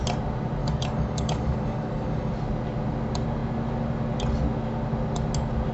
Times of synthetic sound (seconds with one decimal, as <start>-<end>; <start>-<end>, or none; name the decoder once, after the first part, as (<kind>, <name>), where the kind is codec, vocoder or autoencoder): 0.6-2.3 (codec, DAC)